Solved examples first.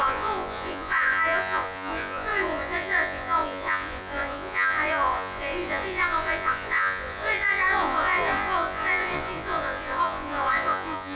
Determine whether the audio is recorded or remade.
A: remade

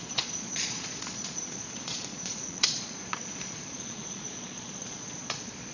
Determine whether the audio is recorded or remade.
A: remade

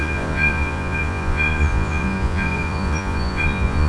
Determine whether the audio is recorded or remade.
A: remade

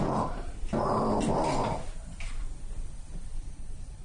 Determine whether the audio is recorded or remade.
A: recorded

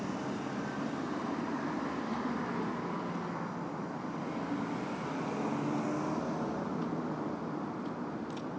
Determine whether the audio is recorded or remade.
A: recorded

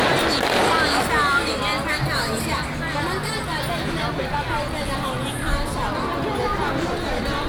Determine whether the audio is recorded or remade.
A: recorded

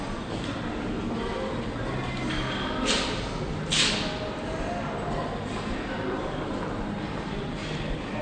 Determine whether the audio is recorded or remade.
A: recorded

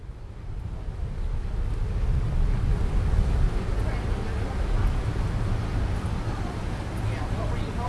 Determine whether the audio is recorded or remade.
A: recorded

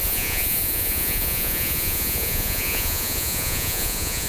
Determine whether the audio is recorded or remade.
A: remade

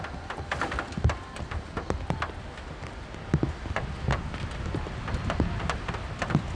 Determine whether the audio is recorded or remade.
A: recorded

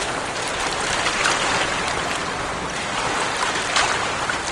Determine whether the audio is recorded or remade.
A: recorded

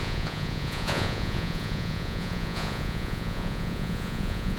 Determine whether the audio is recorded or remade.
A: remade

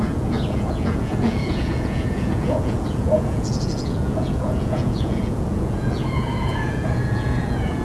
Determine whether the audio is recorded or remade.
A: remade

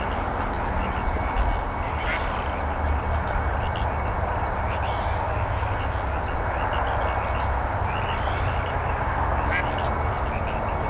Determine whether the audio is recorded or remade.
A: recorded